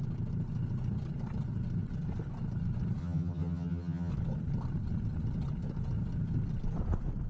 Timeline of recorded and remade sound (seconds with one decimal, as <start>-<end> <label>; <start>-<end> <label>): 0.0-3.0 recorded; 3.0-4.1 remade; 4.1-7.3 recorded